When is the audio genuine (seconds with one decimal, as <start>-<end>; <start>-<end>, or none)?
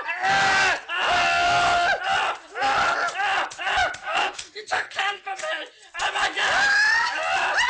0.0-4.0; 5.3-7.7